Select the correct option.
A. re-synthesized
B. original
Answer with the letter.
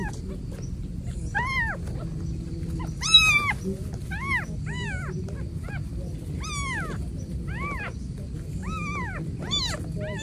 B